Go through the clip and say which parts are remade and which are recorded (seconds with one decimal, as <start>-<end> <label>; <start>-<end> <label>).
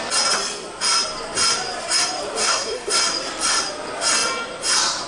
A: 0.0-2.4 recorded; 2.4-3.0 remade; 3.0-5.1 recorded